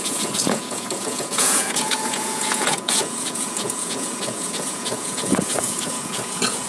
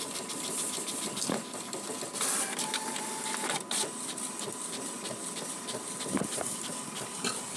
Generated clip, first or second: first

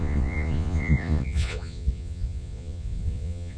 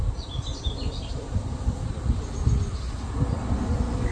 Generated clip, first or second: first